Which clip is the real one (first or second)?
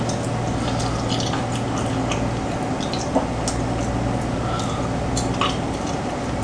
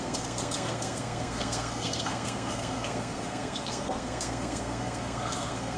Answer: first